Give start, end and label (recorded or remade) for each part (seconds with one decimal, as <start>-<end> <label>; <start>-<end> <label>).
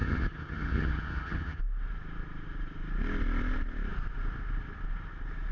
0.0-1.6 remade; 1.6-5.5 recorded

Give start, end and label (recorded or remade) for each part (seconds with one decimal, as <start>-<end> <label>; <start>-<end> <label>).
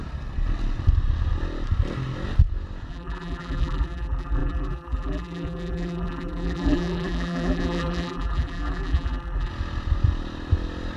0.0-2.9 recorded; 2.9-9.5 remade; 9.5-11.0 recorded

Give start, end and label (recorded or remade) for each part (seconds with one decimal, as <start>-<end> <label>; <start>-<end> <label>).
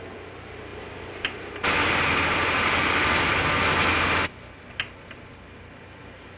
0.0-6.4 recorded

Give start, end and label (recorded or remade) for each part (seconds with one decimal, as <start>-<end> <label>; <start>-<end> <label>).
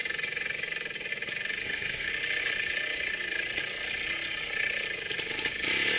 0.0-1.6 recorded; 1.6-2.1 remade; 2.1-6.0 recorded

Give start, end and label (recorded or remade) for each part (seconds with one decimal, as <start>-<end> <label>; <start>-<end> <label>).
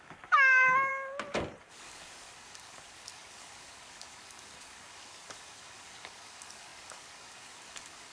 0.0-0.9 remade; 0.9-1.6 recorded; 1.6-8.1 remade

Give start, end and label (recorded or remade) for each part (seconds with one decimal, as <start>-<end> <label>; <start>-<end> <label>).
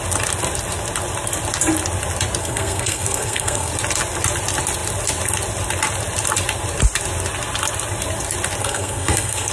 0.0-2.4 recorded; 2.4-3.7 remade; 3.7-8.6 recorded; 8.6-9.5 remade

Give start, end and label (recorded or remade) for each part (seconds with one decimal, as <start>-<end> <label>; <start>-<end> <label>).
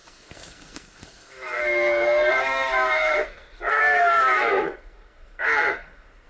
0.0-6.3 remade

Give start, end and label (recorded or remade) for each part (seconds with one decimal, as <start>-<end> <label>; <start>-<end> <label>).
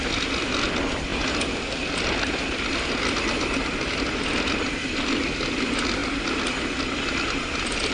0.0-7.9 recorded